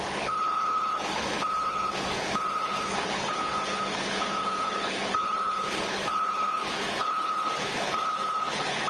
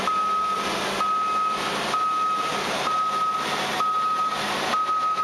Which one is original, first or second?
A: second